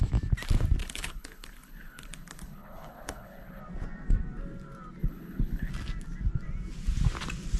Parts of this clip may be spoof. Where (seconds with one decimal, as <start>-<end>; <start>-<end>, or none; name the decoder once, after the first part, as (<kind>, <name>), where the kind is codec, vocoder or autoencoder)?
0.8-3.6 (codec, HILCodec); 5.0-5.7